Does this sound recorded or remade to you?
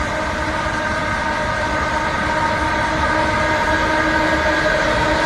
recorded